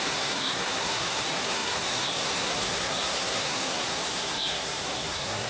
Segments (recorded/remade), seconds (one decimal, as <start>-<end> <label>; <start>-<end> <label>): 0.0-5.5 remade